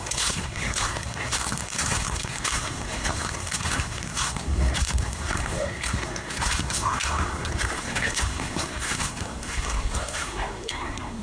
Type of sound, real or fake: fake